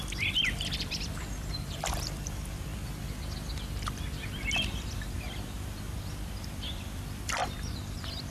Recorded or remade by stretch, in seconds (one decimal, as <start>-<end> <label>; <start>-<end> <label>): 0.0-2.7 remade; 2.7-5.0 recorded; 5.0-8.3 remade